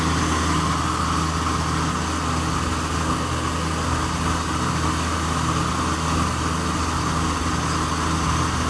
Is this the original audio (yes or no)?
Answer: yes